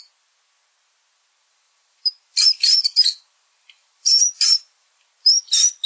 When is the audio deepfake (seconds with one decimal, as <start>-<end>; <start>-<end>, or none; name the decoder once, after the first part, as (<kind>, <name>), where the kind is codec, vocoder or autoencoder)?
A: 1.4-4.9 (vocoder, BigVGAN v2)